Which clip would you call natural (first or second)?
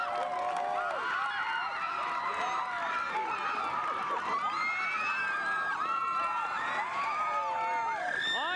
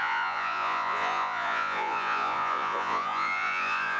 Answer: first